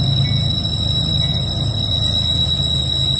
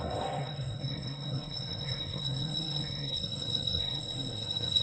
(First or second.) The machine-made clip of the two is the second